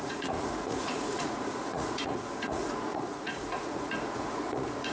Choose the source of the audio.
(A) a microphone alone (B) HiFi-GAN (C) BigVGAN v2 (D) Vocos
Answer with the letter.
D